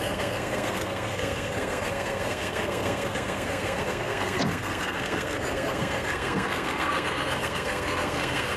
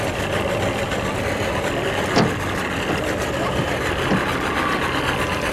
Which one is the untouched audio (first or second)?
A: second